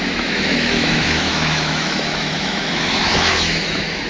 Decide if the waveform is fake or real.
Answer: fake